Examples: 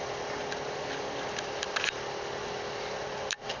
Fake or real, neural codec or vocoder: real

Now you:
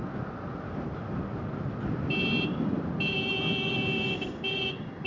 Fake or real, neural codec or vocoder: real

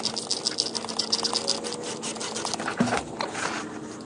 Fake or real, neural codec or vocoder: real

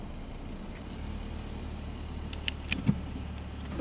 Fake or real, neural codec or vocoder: real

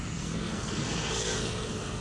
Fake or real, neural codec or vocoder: fake, codec, SNAC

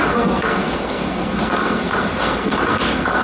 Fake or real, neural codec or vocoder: fake, codec, SNAC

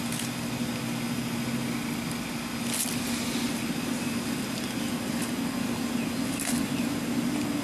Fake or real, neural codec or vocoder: real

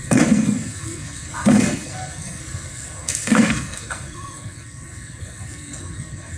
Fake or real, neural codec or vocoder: fake, codec, SNAC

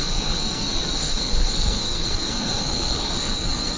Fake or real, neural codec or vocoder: fake, codec, SNAC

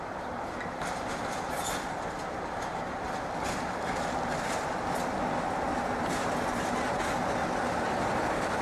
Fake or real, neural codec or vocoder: real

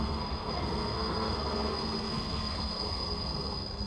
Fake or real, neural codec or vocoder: fake, codec, SNAC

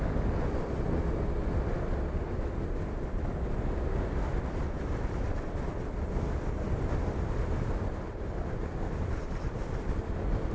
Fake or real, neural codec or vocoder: real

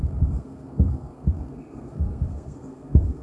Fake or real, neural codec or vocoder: fake, codec, SNAC